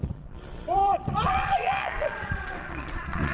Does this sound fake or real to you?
fake